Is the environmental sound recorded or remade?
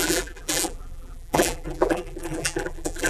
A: remade